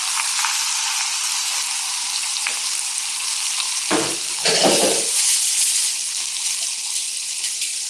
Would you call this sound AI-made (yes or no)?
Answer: no